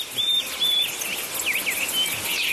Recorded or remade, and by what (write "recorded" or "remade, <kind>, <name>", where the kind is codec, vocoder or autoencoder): recorded